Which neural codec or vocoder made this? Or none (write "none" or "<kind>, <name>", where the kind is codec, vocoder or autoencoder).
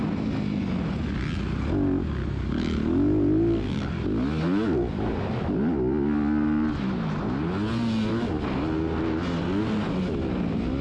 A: none